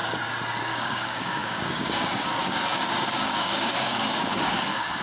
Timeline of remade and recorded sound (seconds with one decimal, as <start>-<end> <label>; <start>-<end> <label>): 0.0-0.6 recorded; 0.6-5.0 remade